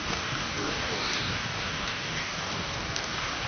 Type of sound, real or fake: fake